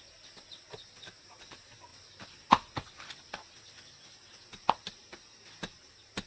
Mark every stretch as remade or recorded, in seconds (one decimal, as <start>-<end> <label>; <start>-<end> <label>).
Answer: 0.0-6.3 recorded